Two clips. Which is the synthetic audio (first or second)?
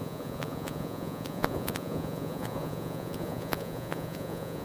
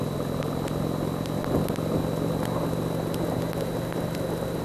first